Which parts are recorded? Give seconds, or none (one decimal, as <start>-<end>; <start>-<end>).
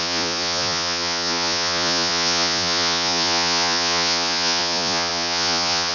none